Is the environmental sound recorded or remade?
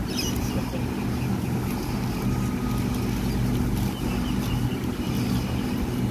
recorded